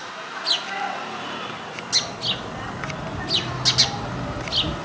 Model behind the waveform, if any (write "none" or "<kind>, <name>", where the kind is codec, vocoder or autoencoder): none